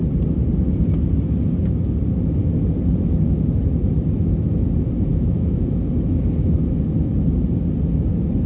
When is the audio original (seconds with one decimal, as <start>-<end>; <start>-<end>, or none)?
0.0-5.1; 5.8-8.5